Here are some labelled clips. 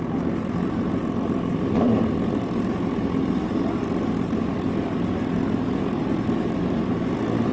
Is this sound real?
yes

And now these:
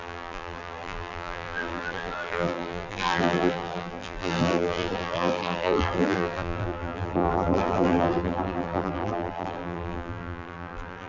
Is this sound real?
no